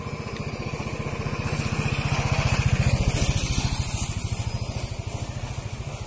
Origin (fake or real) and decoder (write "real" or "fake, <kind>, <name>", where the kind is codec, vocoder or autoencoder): real